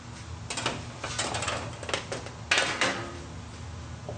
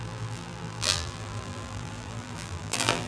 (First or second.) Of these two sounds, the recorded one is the first